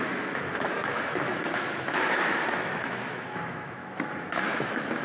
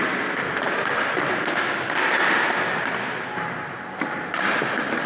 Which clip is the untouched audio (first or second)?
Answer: second